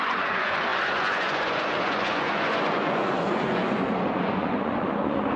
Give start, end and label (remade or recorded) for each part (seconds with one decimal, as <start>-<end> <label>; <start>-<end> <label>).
0.0-5.4 remade